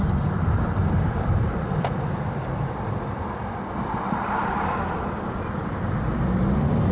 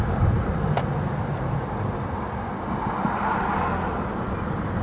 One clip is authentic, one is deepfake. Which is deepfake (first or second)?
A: first